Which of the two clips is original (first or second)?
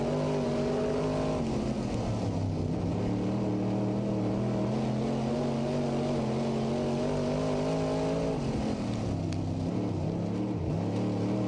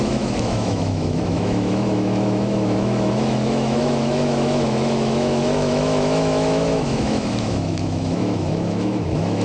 first